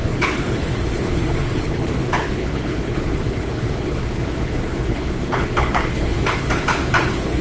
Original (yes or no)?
no